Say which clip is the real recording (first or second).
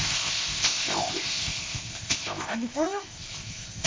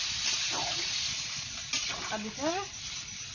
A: second